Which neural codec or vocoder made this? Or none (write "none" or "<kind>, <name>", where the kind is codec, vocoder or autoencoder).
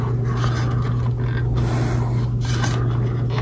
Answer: none